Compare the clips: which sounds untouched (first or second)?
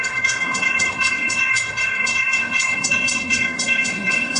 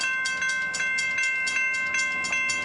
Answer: second